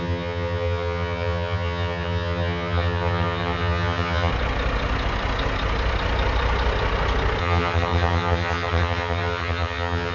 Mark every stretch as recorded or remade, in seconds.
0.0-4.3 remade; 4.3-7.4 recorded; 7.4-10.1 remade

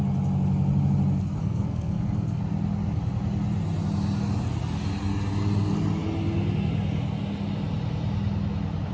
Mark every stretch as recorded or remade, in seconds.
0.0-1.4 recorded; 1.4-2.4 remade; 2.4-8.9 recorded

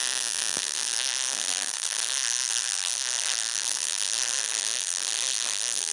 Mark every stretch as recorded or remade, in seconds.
0.0-0.6 recorded; 0.6-5.9 remade

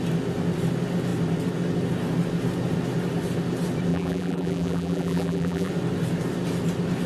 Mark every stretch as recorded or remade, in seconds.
0.0-3.9 recorded; 3.9-5.7 remade; 5.7-7.1 recorded

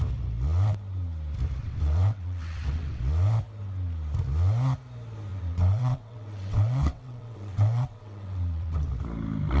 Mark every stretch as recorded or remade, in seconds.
0.0-1.6 recorded; 1.6-3.0 remade; 3.0-5.3 recorded; 5.3-8.9 remade; 8.9-9.6 recorded

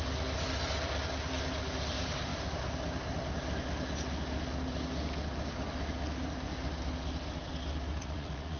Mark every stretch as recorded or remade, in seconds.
0.0-8.0 recorded; 8.0-8.6 remade

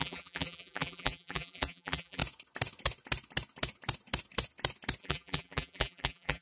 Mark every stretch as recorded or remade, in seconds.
0.0-2.2 remade; 2.2-5.0 recorded; 5.0-6.4 remade

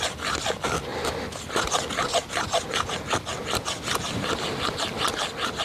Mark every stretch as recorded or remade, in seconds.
0.0-5.6 recorded